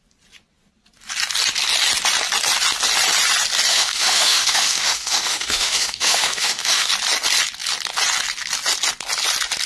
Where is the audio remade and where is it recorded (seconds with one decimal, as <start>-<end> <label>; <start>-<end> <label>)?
0.0-3.7 recorded; 3.7-6.9 remade; 6.9-9.7 recorded